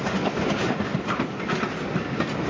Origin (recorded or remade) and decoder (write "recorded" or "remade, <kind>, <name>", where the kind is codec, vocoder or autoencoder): recorded